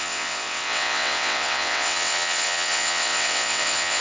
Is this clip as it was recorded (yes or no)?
no